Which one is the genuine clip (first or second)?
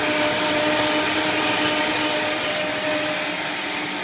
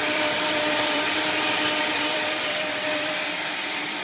first